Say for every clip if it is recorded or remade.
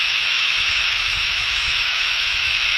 remade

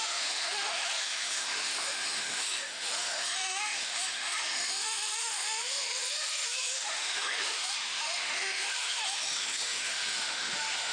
remade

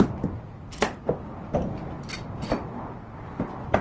recorded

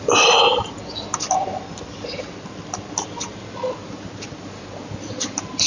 recorded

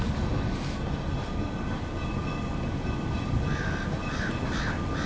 recorded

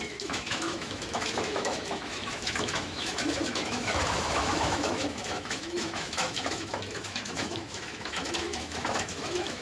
remade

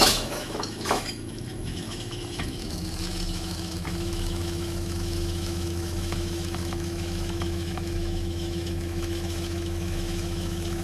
remade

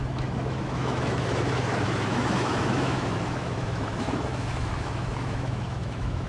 remade